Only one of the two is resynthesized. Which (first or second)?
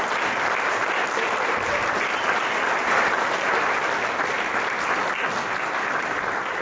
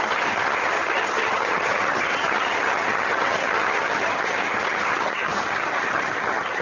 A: second